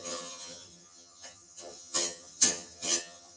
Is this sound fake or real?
fake